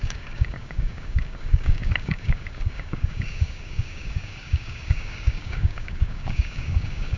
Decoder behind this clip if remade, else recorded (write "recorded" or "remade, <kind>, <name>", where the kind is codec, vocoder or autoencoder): remade, codec, DAC